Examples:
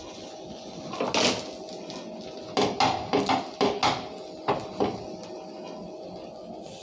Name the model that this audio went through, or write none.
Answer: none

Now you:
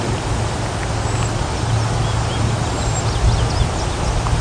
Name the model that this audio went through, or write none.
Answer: none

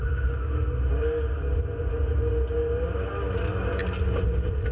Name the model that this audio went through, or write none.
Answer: none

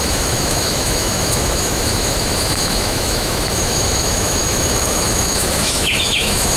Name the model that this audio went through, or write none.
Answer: autoencoder, DAC-VAE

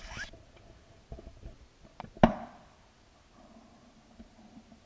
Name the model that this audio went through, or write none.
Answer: none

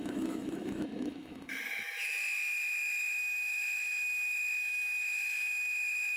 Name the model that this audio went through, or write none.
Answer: autoencoder, DAC-VAE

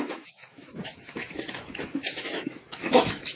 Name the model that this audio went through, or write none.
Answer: autoencoder, DAC-VAE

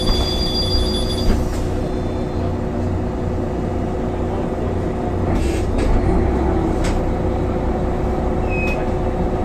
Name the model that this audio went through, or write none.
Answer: none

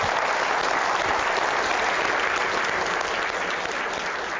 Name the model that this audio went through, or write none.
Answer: none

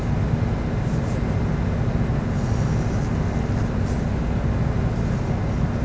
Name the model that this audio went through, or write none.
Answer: none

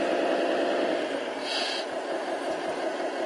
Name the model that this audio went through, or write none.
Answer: none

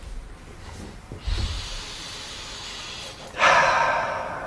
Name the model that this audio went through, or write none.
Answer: none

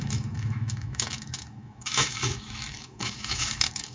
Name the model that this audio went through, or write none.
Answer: autoencoder, DAC-VAE